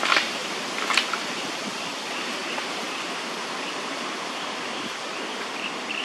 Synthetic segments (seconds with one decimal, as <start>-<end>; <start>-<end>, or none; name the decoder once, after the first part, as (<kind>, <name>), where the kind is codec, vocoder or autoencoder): 2.4-5.1 (vocoder, BigVGAN v2)